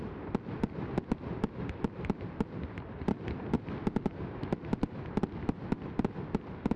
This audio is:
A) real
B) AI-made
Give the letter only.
A